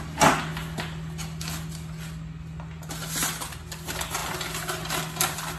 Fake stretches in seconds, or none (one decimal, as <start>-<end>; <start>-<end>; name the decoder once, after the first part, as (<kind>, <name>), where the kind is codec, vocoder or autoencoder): none